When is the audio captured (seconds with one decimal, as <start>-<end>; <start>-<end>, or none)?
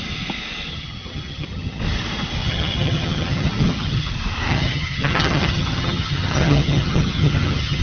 0.0-0.7; 1.8-2.4; 4.1-4.5